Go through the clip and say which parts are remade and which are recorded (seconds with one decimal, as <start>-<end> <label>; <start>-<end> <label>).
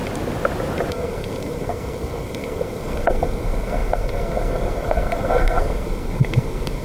0.0-0.9 recorded; 0.9-6.8 remade